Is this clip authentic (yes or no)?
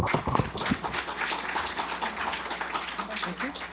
yes